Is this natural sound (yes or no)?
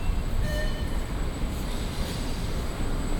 no